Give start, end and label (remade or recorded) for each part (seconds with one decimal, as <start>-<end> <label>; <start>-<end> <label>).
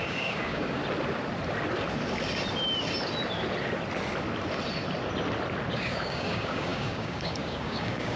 0.0-0.8 remade; 0.8-5.7 recorded; 5.7-8.2 remade